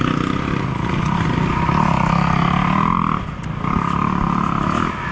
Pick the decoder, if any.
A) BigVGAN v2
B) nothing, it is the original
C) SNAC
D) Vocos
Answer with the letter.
B